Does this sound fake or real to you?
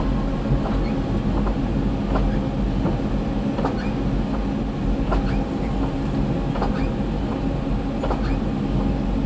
real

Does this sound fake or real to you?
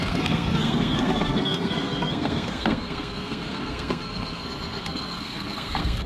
fake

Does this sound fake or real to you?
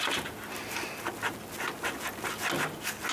real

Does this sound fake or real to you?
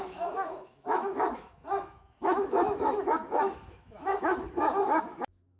fake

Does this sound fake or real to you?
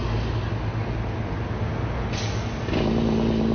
real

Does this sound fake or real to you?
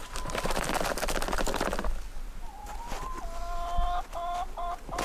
real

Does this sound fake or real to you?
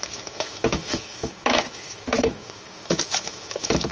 fake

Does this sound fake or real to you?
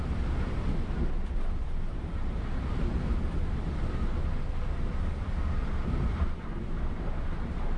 real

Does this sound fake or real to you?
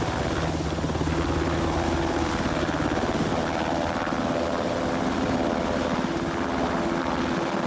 real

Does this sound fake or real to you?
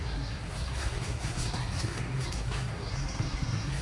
fake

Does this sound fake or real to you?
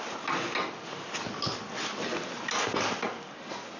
real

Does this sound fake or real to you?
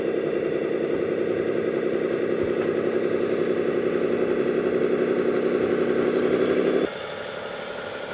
real